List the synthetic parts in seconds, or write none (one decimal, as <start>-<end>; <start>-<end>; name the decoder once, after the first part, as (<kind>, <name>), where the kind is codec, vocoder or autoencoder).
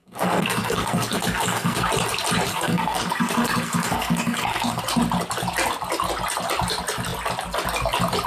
0.0-1.9 (codec, SNAC); 2.5-4.8